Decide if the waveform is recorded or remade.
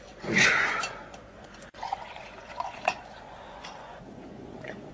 remade